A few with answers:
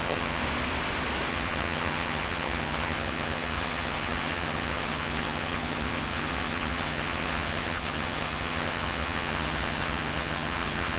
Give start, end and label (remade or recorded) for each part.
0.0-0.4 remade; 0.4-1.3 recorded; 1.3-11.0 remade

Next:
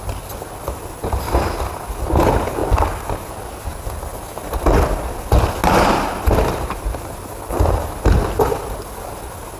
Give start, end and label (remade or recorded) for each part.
0.0-9.6 recorded